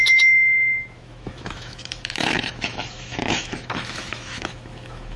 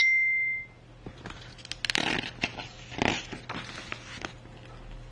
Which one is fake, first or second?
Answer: first